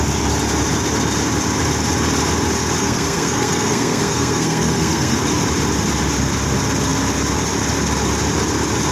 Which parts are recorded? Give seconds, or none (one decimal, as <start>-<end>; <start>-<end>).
0.0-2.8; 5.2-8.9